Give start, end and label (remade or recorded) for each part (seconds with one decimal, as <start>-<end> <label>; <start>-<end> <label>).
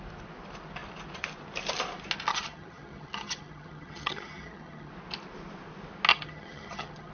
0.0-2.3 recorded; 2.3-4.9 remade; 4.9-6.1 recorded; 6.1-7.1 remade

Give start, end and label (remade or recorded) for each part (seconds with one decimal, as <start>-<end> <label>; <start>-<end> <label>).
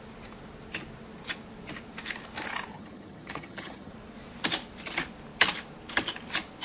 0.0-2.7 recorded; 2.7-3.9 remade; 3.9-6.6 recorded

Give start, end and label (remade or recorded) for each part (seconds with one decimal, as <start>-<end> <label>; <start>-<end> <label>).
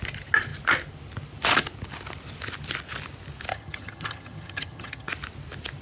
0.0-3.5 recorded; 3.5-5.1 remade; 5.1-5.8 recorded